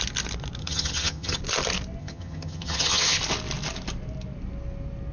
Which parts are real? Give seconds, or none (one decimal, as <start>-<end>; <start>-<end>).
0.0-0.6; 1.4-2.0; 3.2-5.1